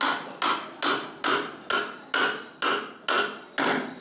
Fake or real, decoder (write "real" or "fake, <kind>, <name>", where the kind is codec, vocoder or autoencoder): real